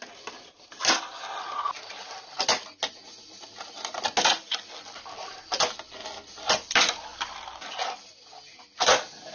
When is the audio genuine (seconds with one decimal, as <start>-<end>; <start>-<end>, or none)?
0.0-9.3